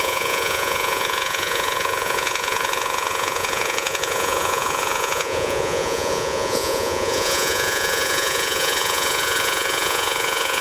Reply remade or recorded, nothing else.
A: remade